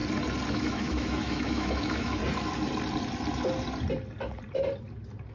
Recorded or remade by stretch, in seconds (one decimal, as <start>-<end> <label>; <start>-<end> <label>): 0.0-0.5 recorded; 0.5-2.2 remade; 2.2-5.3 recorded